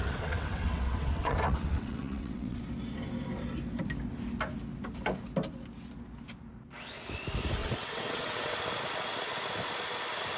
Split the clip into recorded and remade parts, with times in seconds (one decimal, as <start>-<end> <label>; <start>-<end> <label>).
0.0-2.6 remade; 2.6-7.6 recorded; 7.6-8.6 remade; 8.6-10.4 recorded